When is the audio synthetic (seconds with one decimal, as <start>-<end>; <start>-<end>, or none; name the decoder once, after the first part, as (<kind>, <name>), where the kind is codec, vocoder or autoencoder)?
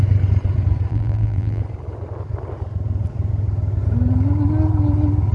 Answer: 0.9-1.6 (vocoder, BigVGAN v2)